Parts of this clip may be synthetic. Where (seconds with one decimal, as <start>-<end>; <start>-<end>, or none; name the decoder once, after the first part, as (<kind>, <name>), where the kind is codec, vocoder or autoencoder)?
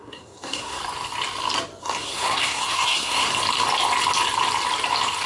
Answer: 0.0-0.8 (codec, SNAC); 1.8-3.3